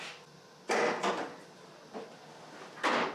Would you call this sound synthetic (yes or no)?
no